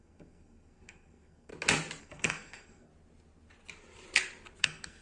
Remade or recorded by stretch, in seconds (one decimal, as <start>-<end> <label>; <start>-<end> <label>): 0.0-1.5 remade; 1.5-2.0 recorded; 2.0-2.9 remade; 2.9-4.6 recorded; 4.6-5.0 remade